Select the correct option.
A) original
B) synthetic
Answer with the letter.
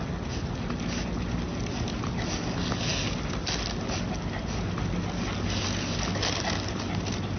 A